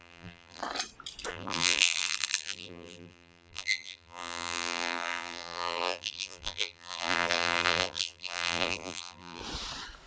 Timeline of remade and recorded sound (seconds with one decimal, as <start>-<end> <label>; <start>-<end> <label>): 0.0-0.6 remade; 0.6-1.3 recorded; 1.3-9.4 remade; 9.4-10.1 recorded